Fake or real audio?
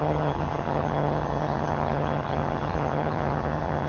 fake